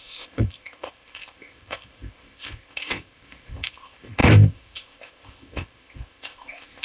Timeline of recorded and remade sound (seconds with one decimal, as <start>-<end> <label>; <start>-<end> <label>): 0.0-6.8 remade